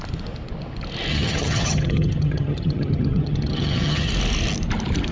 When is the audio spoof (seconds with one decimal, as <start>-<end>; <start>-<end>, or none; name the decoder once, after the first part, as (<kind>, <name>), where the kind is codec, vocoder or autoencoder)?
1.1-4.1 (vocoder, HiFi-GAN)